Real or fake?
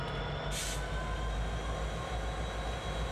real